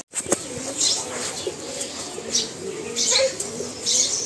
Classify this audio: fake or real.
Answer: real